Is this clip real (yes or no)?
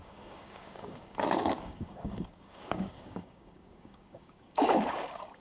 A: no